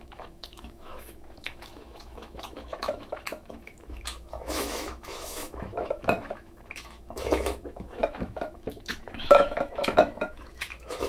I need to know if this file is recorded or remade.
remade